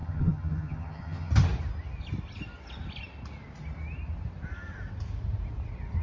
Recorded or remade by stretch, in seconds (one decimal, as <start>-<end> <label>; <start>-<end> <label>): 0.0-1.3 remade; 1.3-6.0 recorded